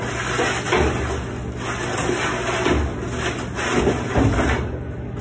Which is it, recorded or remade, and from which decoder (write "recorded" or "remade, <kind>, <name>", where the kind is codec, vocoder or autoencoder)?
recorded